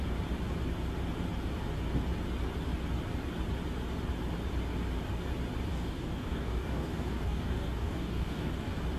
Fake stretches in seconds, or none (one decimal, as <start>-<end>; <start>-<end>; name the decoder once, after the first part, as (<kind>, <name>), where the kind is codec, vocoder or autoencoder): 5.7-8.5 (codec, DAC)